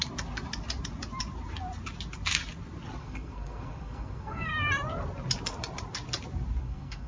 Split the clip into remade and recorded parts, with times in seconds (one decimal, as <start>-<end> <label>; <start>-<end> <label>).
0.0-3.0 recorded; 3.0-4.5 remade; 4.5-6.6 recorded; 6.6-7.1 remade